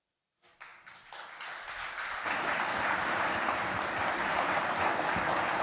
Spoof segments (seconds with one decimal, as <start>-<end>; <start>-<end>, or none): none